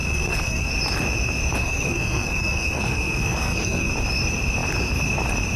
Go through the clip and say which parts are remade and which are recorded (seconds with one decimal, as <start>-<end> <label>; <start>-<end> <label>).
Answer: 0.0-0.7 remade; 0.7-1.6 recorded; 1.6-3.9 remade; 3.9-5.6 recorded